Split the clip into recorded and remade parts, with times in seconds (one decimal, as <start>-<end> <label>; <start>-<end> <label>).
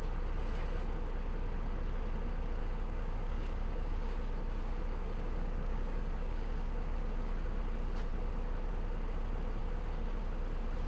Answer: 0.0-2.6 recorded; 2.6-7.6 remade; 7.6-9.6 recorded; 9.6-10.2 remade; 10.2-10.9 recorded